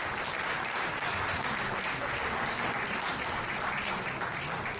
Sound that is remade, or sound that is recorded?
recorded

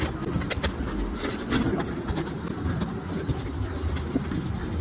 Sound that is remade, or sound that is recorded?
recorded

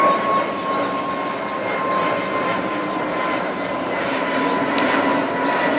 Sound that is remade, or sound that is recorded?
recorded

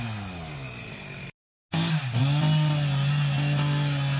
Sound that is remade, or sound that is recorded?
recorded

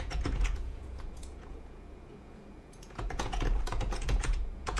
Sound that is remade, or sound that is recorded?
remade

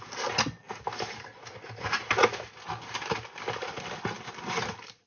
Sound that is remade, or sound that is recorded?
recorded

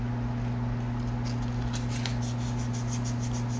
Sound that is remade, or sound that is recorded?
recorded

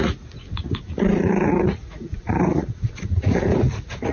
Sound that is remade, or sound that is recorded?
remade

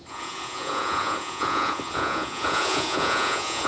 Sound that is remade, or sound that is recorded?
remade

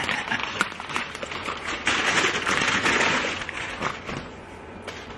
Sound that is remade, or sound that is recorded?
remade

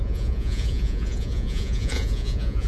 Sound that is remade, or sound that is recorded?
remade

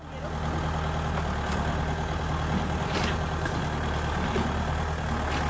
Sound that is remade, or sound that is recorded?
recorded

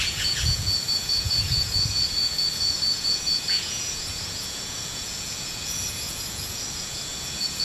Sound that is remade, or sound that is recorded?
remade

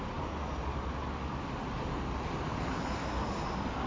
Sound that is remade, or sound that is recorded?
recorded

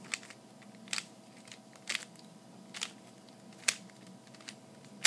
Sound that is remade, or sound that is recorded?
recorded